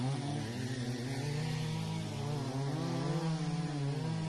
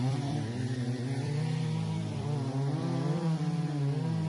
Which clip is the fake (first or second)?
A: second